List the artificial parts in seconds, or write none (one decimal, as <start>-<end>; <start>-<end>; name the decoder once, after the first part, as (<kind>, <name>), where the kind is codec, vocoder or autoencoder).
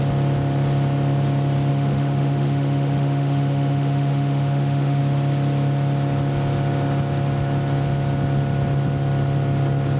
1.7-5.0 (autoencoder, DAC-VAE)